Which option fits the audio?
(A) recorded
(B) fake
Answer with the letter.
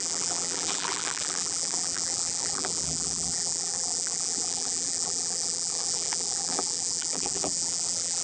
B